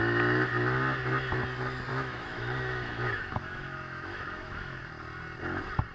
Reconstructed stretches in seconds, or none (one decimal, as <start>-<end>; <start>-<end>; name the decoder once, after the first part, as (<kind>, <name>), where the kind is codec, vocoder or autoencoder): 1.9-4.8 (autoencoder, DAC-VAE)